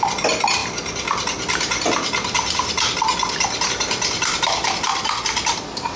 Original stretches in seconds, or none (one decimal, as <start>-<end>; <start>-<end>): 0.0-6.0